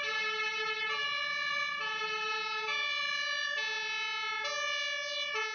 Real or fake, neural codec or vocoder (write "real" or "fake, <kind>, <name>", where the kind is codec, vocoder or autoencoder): real